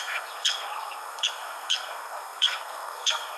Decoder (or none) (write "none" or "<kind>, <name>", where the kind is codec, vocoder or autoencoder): codec, SNAC